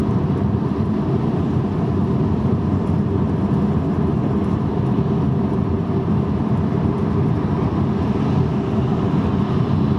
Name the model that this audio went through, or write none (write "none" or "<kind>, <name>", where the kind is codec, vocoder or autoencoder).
vocoder, BigVGAN v2